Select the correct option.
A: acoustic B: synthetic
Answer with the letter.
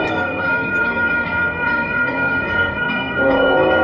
B